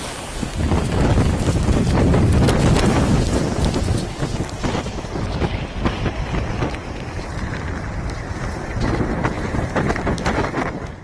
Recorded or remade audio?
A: recorded